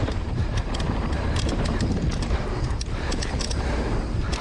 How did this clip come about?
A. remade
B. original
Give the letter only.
A